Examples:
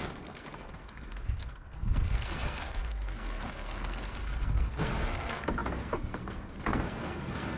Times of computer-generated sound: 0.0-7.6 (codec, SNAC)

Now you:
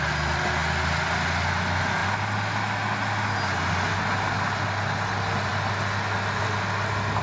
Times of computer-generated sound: none

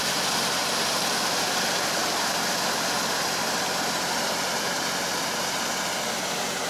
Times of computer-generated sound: 0.0-6.7 (vocoder, BigVGAN v2)

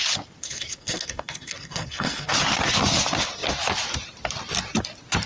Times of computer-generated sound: 0.4-2.3 (codec, SNAC)

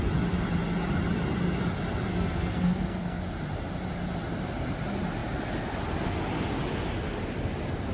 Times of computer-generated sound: 2.1-3.2 (codec, SNAC)

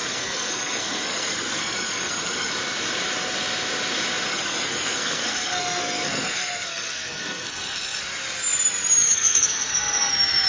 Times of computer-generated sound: 0.0-2.5 (codec, SNAC); 4.3-8.0; 9.0-10.1

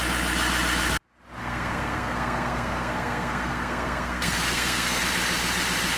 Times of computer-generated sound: 1.4-5.0 (codec, SNAC)

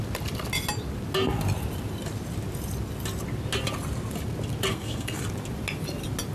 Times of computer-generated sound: 4.7-5.2 (codec, SNAC)